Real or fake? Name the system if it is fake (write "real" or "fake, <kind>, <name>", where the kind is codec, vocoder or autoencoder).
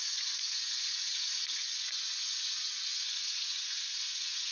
fake, vocoder, Vocos